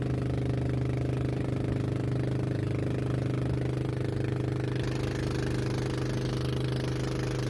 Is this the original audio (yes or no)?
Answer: yes